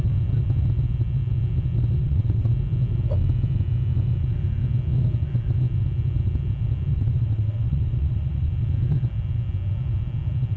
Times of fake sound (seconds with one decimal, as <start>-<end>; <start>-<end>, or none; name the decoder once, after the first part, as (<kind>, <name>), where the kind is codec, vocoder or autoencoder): 2.0-2.5 (vocoder, WaveNeXt); 6.9-8.5